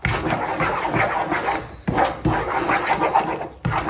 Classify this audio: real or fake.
real